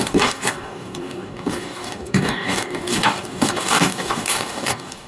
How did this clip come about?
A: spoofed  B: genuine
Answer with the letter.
A